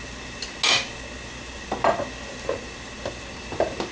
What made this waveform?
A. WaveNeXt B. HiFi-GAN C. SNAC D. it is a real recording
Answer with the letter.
D